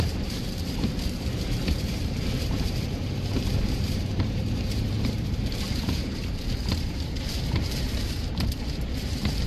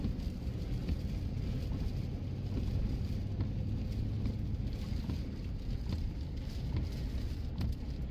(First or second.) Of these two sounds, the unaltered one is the second